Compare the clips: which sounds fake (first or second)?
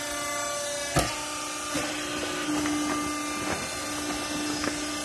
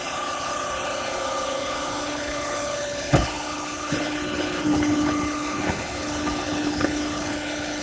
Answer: second